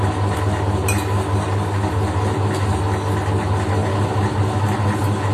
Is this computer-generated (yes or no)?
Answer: no